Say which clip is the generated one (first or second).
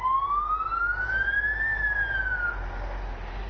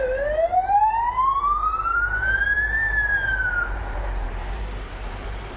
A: second